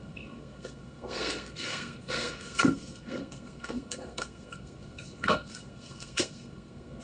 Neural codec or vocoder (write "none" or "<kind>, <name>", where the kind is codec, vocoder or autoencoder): codec, SNAC